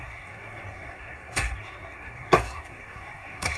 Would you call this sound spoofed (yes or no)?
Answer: yes